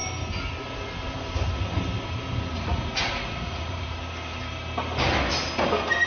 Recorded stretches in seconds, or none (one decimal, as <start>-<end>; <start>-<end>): 0.0-2.5; 3.9-6.1